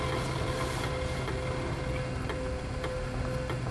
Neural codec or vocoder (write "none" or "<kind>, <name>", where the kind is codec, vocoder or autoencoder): none